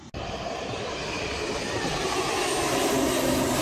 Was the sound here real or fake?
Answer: real